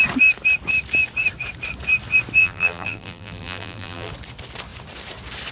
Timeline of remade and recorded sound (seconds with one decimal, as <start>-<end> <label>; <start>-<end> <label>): 0.0-2.4 recorded; 2.4-4.1 remade; 4.1-5.5 recorded